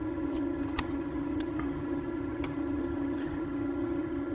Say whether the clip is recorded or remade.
remade